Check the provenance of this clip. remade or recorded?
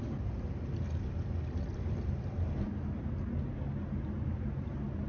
recorded